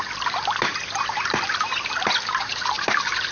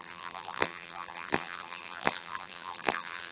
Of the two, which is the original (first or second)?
first